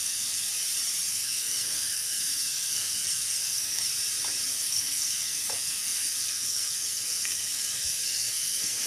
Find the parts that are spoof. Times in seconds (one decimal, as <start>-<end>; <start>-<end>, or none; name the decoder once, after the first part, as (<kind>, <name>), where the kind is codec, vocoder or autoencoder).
0.0-0.5 (codec, SNAC); 1.1-3.9; 4.5-8.9